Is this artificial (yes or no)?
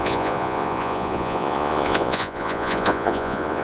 yes